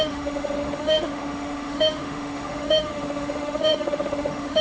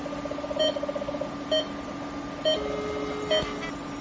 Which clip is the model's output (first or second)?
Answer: first